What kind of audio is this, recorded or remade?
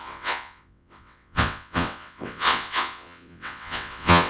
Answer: remade